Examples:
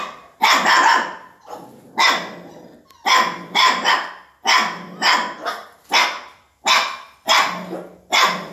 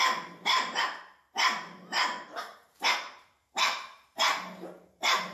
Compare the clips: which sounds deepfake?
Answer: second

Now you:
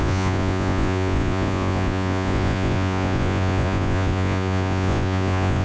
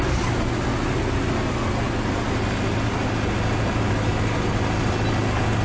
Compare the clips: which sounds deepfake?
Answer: first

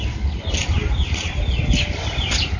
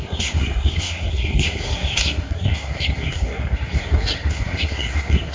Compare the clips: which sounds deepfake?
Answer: second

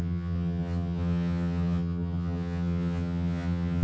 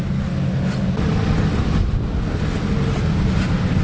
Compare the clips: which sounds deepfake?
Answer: first